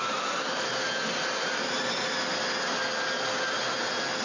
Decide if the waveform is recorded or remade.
recorded